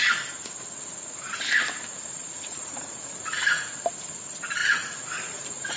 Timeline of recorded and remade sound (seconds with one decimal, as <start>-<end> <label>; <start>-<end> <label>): 0.0-1.9 recorded; 1.9-3.8 remade; 3.8-4.6 recorded; 4.6-5.8 remade